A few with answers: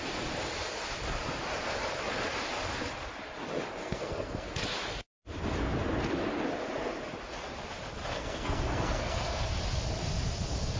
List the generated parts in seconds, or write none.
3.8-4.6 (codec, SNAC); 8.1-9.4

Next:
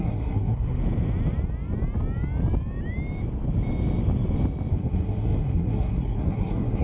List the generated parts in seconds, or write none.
0.0-0.8 (codec, SNAC); 4.7-6.8